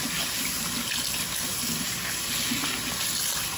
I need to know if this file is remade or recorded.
recorded